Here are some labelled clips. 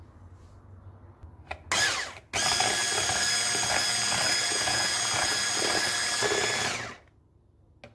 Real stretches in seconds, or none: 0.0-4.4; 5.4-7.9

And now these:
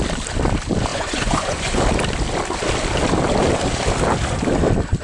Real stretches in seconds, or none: 0.0-0.9; 1.8-5.0

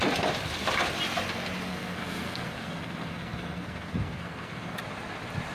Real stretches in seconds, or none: 0.0-1.7; 4.8-5.5

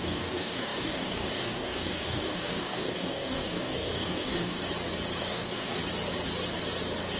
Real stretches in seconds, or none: 4.6-5.2; 5.8-7.2

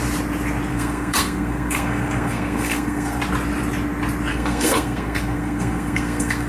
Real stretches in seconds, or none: 0.0-0.7; 3.2-4.3

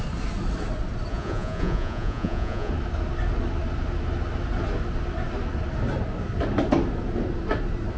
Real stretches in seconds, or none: 0.0-1.1; 2.7-8.0

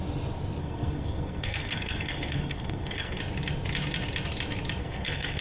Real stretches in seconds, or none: 0.0-0.6; 3.2-4.8

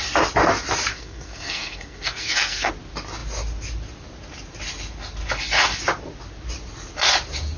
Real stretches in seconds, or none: 0.0-0.9; 2.7-7.6